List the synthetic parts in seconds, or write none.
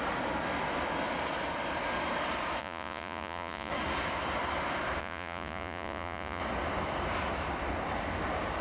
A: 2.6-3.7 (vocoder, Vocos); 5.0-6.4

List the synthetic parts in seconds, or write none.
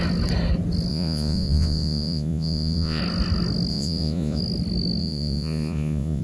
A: 0.9-3.0 (vocoder, Vocos); 3.7-4.4; 5.0-6.2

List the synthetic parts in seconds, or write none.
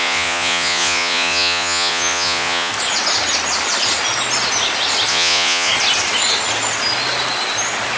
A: 0.0-2.7 (vocoder, Vocos); 5.1-5.7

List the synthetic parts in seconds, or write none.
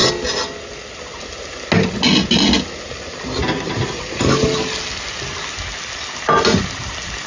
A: none